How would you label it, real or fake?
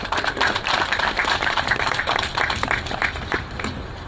fake